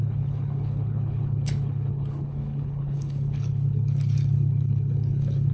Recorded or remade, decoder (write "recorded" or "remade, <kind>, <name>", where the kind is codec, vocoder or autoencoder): remade, codec, HILCodec